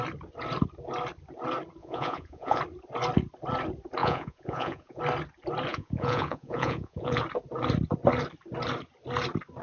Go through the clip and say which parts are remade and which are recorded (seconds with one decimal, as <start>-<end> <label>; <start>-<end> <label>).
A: 0.0-1.8 recorded; 1.8-2.6 remade; 2.6-4.0 recorded; 4.0-5.0 remade; 5.0-5.7 recorded; 5.7-7.2 remade; 7.2-9.6 recorded